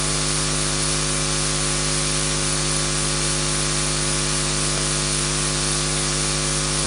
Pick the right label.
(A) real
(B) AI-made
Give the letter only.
A